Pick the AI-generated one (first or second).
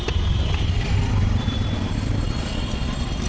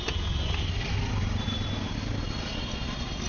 first